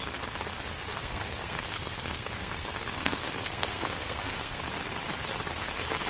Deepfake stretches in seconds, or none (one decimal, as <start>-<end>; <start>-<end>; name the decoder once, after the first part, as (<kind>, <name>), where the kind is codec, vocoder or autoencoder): 0.9-4.6 (codec, SNAC)